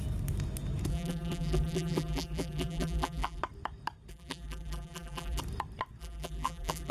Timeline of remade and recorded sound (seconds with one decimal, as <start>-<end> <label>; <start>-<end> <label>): 0.0-0.9 recorded; 0.9-3.4 remade; 3.4-4.1 recorded; 4.1-5.4 remade; 5.4-6.0 recorded; 6.0-6.9 remade